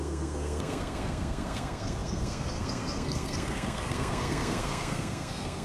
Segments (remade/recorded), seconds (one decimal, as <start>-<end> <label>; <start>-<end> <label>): 0.0-5.6 remade